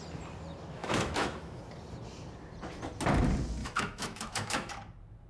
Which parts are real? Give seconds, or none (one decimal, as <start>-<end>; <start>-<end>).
0.0-0.8; 1.6-3.6; 4.7-5.3